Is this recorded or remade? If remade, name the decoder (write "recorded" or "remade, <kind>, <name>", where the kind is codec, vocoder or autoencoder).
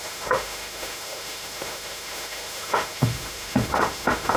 remade, autoencoder, DAC-VAE